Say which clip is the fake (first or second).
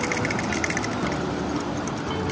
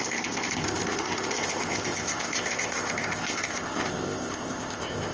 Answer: second